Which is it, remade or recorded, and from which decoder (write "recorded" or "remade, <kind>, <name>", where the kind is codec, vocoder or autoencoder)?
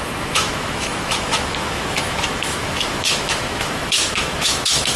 remade, autoencoder, DAC-VAE